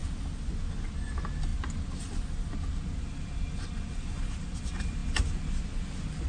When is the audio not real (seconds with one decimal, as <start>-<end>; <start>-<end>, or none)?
none